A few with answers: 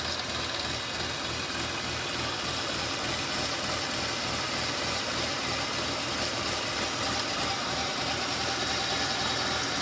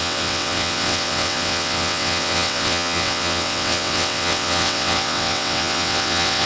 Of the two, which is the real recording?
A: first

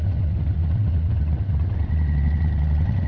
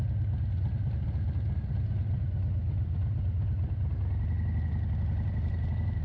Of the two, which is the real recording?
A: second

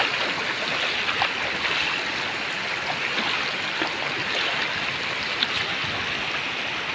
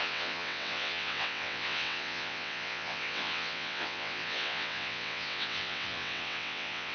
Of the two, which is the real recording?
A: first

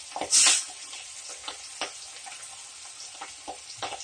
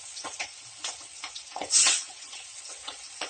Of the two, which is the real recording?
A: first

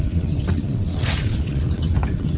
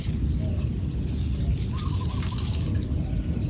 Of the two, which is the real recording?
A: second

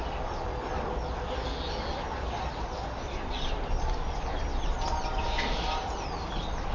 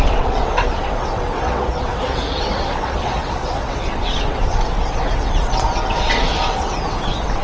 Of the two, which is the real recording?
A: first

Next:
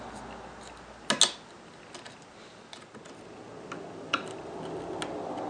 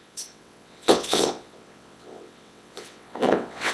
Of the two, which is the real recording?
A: first